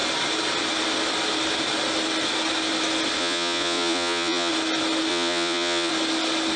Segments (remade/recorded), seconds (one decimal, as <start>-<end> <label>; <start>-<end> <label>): 0.0-3.2 recorded; 3.2-4.5 remade; 4.5-5.1 recorded; 5.1-5.9 remade; 5.9-6.6 recorded